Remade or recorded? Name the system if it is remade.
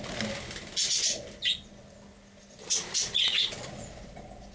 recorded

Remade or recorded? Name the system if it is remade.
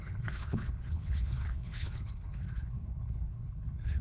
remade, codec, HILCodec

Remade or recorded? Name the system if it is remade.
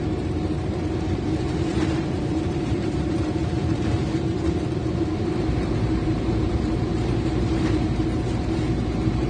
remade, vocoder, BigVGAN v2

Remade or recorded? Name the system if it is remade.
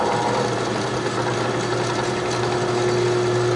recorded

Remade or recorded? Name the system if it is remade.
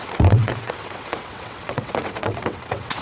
remade, vocoder, WaveNeXt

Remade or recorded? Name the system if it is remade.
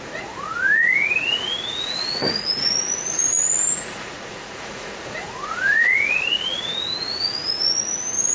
remade, vocoder, Vocos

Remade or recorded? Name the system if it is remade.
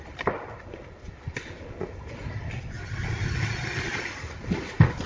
recorded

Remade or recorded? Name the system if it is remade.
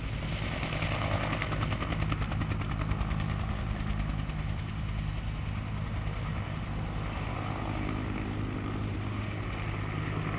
recorded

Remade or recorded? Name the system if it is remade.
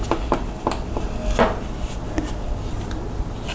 recorded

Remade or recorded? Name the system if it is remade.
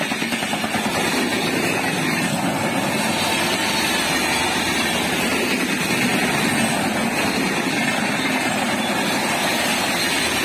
recorded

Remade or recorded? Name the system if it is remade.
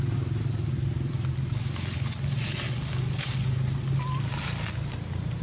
recorded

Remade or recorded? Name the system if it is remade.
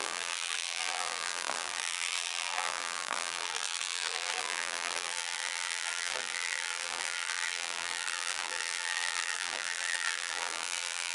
remade, vocoder, BigVGAN v2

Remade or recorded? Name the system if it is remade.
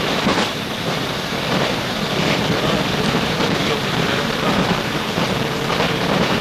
remade, vocoder, BigVGAN v2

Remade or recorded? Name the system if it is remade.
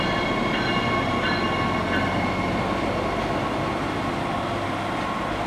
recorded